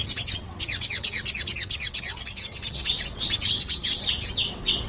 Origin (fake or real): fake